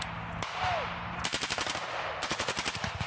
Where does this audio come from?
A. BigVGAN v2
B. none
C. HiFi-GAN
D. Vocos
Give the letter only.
B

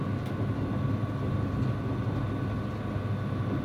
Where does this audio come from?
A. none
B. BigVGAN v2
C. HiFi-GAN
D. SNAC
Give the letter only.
A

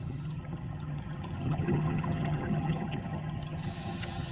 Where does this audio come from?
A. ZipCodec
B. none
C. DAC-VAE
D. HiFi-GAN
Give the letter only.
D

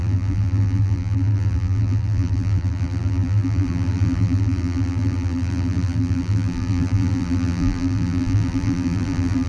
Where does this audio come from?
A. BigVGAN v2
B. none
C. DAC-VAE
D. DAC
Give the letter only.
A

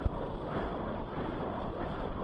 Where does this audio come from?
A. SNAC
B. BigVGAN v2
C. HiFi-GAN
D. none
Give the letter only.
B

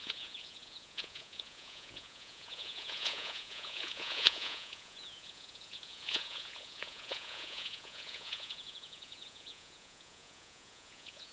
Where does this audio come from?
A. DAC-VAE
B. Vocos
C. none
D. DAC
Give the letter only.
B